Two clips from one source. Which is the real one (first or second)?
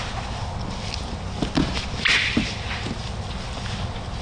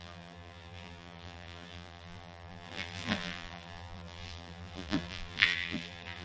first